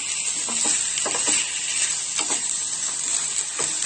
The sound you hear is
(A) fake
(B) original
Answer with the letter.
B